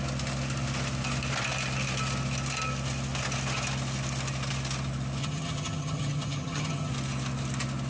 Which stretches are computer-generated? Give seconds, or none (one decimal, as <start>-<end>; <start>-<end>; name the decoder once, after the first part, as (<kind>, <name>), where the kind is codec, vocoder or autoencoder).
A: 5.2-6.9 (vocoder, HiFi-GAN)